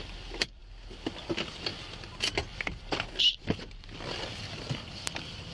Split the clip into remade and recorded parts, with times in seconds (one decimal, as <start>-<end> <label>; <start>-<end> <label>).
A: 0.0-0.6 remade; 0.6-1.2 recorded; 1.2-5.5 remade